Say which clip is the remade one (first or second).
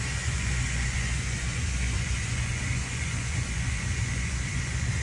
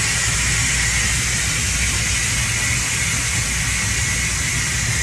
first